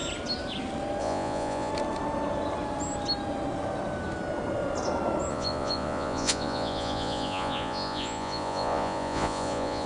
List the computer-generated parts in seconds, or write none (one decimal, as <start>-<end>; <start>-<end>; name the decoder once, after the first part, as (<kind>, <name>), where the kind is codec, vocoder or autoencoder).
1.0-1.7 (vocoder, Vocos); 5.3-9.9